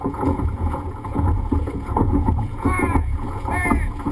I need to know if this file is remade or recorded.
remade